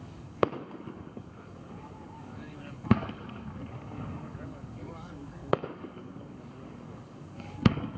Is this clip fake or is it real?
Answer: fake